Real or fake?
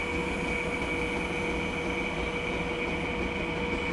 real